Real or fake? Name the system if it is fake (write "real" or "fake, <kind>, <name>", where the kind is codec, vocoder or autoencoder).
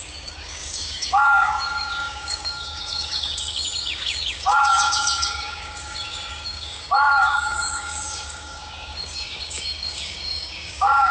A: fake, codec, DAC